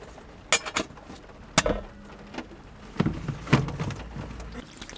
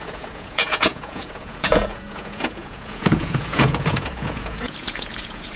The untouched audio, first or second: first